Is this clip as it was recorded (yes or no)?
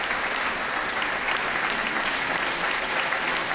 yes